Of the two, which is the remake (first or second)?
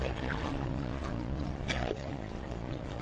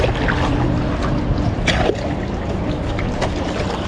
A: first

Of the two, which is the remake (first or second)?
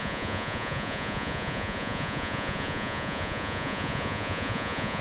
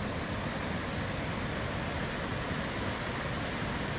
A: first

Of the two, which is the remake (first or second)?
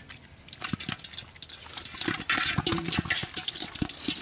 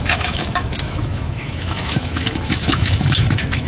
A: second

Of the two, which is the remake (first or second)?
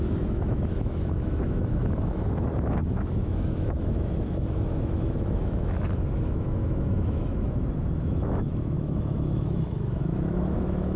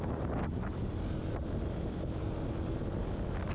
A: first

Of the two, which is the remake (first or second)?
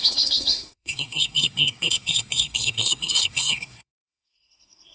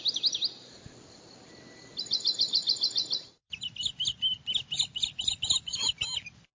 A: first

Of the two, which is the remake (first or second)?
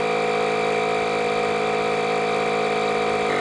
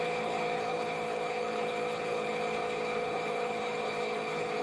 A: second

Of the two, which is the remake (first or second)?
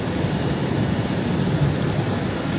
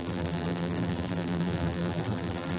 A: second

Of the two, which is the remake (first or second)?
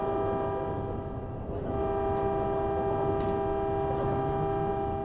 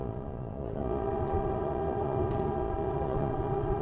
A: second